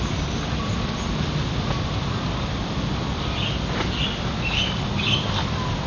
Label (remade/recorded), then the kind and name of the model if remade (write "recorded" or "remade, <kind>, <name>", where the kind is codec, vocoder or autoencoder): recorded